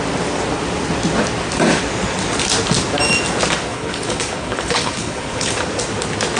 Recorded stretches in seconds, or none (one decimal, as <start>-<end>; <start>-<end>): 0.0-3.7; 5.5-6.4